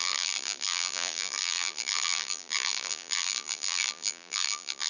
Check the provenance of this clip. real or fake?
fake